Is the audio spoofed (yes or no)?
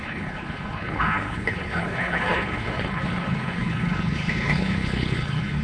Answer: yes